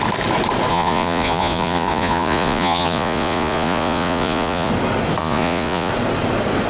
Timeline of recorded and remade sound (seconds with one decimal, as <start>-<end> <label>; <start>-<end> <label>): 0.0-0.7 recorded; 0.7-4.7 remade; 4.7-5.2 recorded; 5.2-5.9 remade; 5.9-6.7 recorded